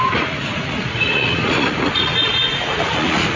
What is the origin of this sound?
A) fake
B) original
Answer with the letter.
A